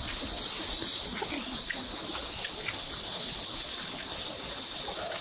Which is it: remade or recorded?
recorded